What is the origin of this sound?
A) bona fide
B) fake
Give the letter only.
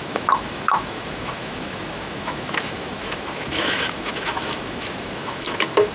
B